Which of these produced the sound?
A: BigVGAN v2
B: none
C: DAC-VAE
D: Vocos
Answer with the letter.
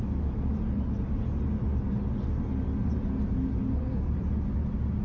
B